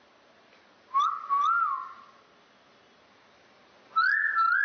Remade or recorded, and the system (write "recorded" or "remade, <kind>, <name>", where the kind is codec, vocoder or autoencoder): recorded